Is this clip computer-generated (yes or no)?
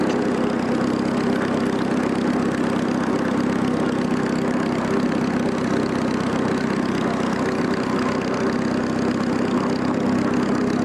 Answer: no